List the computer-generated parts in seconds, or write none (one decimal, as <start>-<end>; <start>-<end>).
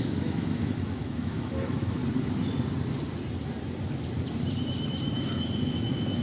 0.0-2.0; 5.7-6.2